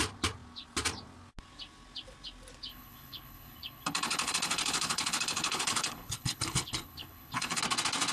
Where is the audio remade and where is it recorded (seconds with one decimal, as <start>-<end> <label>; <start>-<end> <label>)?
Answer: 0.0-2.7 recorded; 2.7-7.6 remade; 7.6-8.1 recorded